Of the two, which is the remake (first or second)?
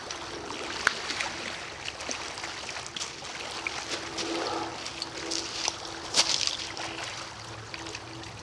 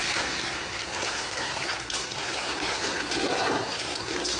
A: second